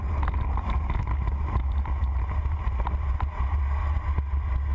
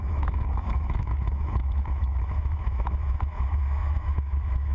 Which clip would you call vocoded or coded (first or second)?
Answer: second